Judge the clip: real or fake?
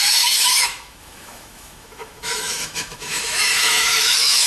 fake